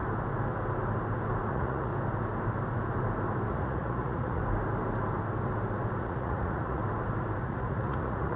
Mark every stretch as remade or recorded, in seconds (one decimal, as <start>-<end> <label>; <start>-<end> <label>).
0.0-1.5 recorded; 1.5-1.9 remade; 1.9-3.5 recorded; 3.5-4.4 remade; 4.4-6.0 recorded; 6.0-6.8 remade; 6.8-7.4 recorded; 7.4-8.4 remade